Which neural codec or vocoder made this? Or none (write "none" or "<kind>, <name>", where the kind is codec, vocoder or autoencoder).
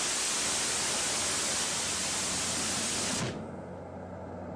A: none